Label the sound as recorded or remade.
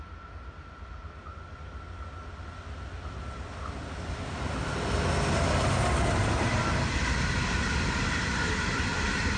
recorded